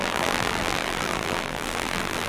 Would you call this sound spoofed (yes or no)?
yes